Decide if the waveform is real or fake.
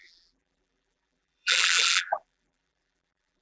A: fake